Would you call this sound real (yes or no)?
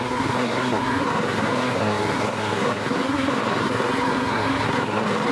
no